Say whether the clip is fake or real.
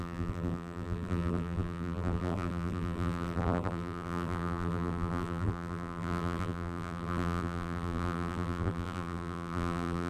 fake